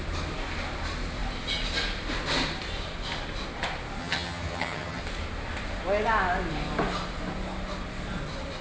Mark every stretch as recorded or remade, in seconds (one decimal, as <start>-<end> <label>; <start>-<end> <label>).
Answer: 0.0-4.0 recorded; 4.0-5.0 remade; 5.0-8.6 recorded

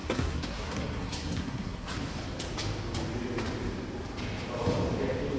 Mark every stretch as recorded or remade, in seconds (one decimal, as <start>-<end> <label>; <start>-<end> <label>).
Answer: 0.0-1.9 remade; 1.9-5.4 recorded

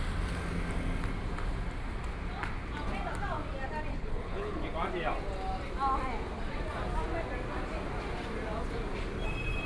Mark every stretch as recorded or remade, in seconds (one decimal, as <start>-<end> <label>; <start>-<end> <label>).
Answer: 0.0-3.9 recorded; 3.9-4.6 remade; 4.6-9.7 recorded

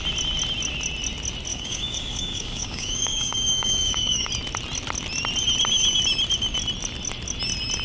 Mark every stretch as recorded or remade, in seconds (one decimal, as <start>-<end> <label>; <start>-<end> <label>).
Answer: 0.0-1.5 recorded; 1.5-4.3 remade; 4.3-7.8 recorded

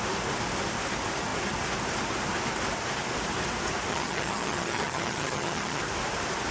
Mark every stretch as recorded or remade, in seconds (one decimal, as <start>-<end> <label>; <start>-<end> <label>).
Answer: 0.0-3.9 recorded; 3.9-5.8 remade; 5.8-6.5 recorded

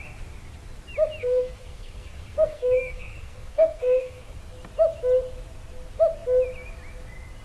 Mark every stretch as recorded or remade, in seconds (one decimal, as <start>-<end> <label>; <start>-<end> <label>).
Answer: 0.0-1.2 recorded; 1.2-4.4 remade; 4.4-7.4 recorded

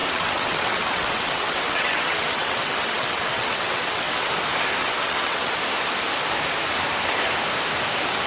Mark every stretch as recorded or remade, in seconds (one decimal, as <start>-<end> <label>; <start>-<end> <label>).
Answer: 0.0-4.3 remade; 4.3-4.8 recorded; 4.8-5.5 remade; 5.5-8.3 recorded

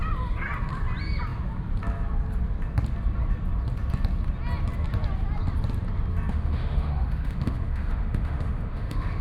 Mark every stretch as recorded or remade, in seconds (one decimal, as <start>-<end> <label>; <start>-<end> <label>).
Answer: 0.0-6.3 recorded; 6.3-9.2 remade